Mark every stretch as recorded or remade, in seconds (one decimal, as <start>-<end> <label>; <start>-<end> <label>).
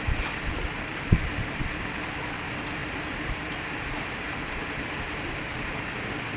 0.0-0.9 recorded; 0.9-1.6 remade; 1.6-2.8 recorded; 2.8-6.0 remade; 6.0-6.4 recorded